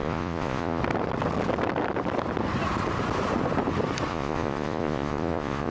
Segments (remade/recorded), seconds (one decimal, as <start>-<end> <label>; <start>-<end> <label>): 0.0-0.8 remade; 0.8-4.1 recorded; 4.1-5.7 remade